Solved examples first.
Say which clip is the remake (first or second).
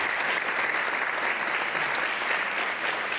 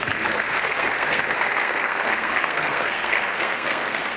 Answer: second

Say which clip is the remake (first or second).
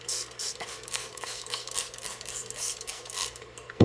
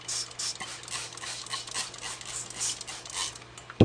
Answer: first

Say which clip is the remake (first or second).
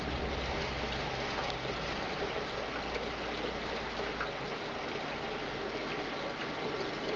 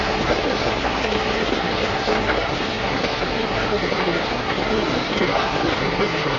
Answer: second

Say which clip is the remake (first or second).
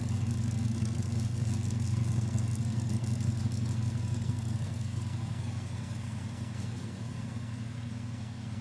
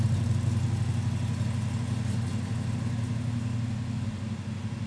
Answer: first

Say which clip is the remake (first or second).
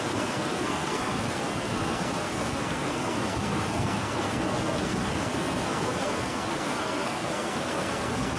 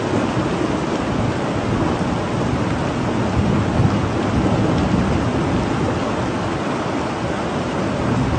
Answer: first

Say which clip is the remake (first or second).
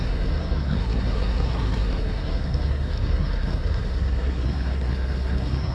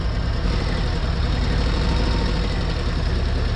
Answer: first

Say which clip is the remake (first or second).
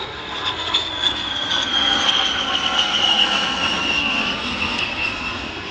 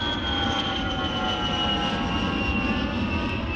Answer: first